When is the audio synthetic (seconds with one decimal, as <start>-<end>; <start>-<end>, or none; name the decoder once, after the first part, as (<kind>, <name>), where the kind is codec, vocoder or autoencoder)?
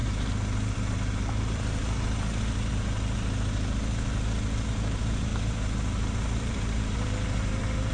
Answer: 4.7-5.3 (vocoder, BigVGAN v2); 6.4-7.9